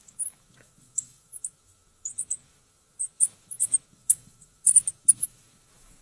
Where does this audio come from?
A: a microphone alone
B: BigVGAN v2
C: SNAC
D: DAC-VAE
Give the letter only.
D